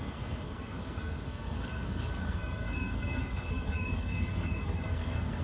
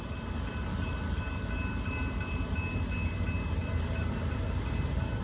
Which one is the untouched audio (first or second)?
second